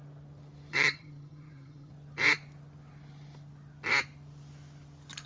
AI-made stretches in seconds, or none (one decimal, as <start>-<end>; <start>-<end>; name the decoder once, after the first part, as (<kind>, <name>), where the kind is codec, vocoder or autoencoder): 0.7-1.9 (vocoder, HiFi-GAN)